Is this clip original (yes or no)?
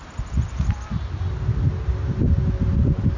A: yes